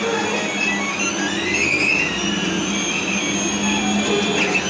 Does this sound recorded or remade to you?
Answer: recorded